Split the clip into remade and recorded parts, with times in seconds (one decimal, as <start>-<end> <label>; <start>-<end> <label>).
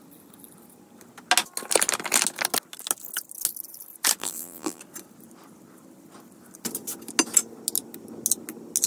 0.0-4.2 recorded; 4.2-4.8 remade; 4.8-8.9 recorded